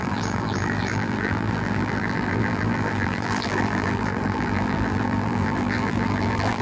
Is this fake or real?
fake